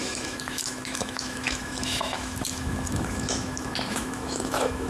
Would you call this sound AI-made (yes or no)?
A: yes